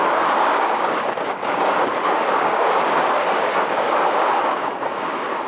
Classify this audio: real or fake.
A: fake